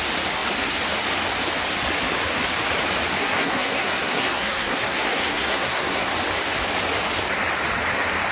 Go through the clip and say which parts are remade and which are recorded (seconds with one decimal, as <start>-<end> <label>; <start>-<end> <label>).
0.0-3.2 recorded; 3.2-6.1 remade; 6.1-8.3 recorded